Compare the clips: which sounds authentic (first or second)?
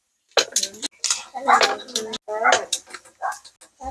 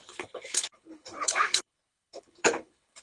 first